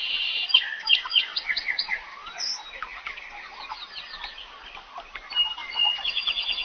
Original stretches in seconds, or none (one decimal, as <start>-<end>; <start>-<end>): 0.0-1.3; 2.3-5.6